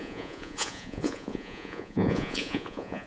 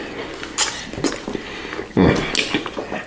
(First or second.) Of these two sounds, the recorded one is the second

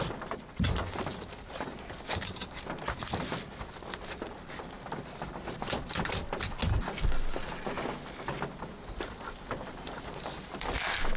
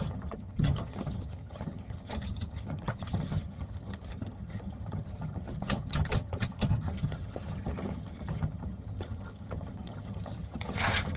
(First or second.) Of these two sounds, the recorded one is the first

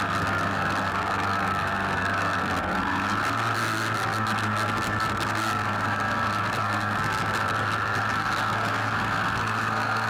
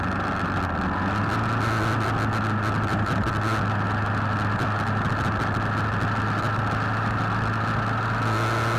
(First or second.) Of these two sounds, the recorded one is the second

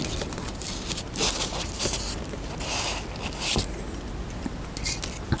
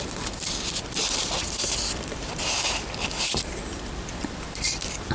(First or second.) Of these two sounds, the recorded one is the first